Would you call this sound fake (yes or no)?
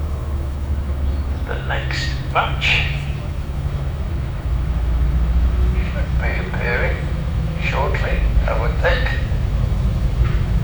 yes